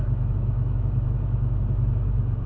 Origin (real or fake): fake